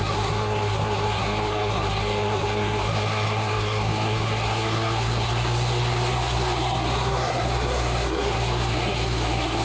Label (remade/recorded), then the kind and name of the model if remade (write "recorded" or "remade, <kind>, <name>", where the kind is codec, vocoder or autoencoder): remade, codec, SNAC